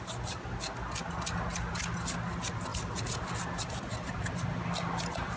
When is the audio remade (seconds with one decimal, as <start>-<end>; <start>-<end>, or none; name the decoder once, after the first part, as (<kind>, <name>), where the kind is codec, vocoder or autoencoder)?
none